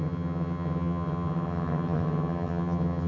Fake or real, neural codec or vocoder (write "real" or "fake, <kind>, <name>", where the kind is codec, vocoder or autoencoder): fake, vocoder, HiFi-GAN